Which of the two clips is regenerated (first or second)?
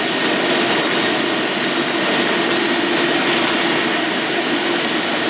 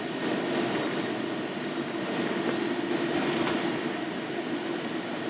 second